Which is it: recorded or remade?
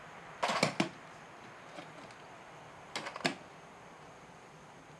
recorded